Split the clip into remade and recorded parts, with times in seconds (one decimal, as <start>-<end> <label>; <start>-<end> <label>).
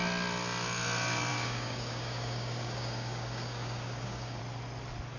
0.0-1.3 recorded; 1.3-4.4 remade; 4.4-5.2 recorded